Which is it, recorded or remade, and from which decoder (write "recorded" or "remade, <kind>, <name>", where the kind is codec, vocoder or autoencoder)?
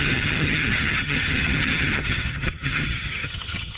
remade, vocoder, HiFi-GAN